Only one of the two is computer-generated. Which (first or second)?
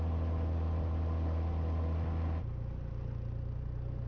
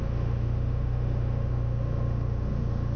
second